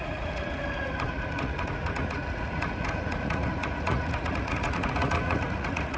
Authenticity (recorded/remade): remade